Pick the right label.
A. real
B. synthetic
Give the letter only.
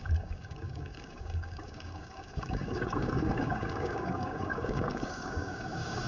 B